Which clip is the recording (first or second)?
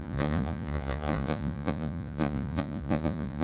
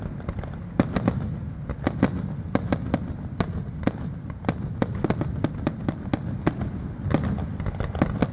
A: second